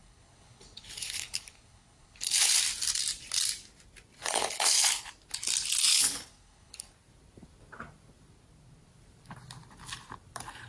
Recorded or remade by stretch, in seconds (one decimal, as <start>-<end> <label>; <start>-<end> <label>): 0.0-2.6 remade; 2.6-4.2 recorded; 4.2-5.1 remade; 5.1-5.9 recorded; 5.9-6.9 remade; 6.9-10.7 recorded